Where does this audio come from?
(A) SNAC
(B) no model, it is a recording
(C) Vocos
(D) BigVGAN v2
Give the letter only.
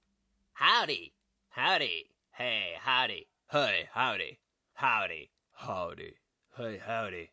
B